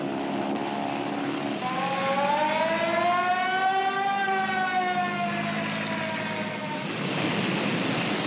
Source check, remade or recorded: recorded